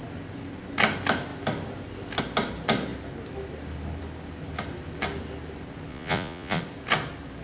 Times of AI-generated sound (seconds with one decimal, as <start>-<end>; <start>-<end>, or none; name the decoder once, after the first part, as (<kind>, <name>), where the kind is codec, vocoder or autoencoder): 5.9-6.6 (vocoder, Vocos)